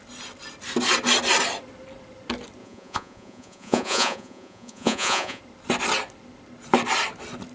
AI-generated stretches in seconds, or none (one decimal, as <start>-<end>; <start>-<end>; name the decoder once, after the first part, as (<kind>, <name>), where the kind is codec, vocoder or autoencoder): 2.6-5.4 (vocoder, Vocos)